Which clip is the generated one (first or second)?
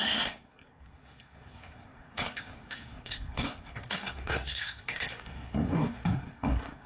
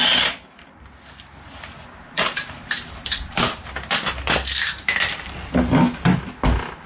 first